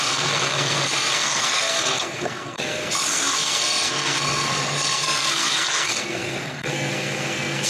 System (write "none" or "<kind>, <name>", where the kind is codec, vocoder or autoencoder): codec, SNAC